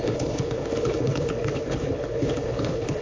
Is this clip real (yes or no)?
no